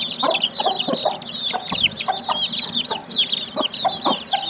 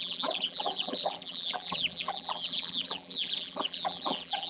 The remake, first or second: second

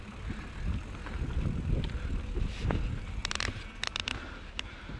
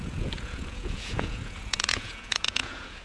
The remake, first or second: second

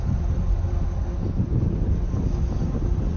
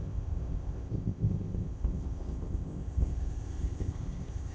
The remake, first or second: second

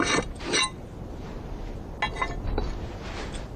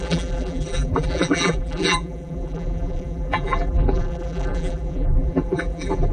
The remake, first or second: second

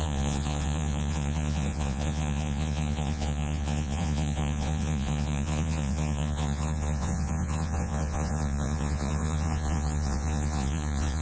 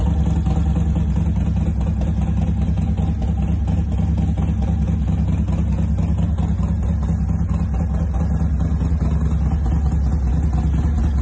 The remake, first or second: first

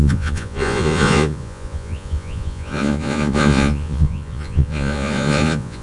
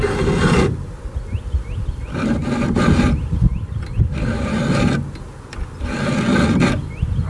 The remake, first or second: first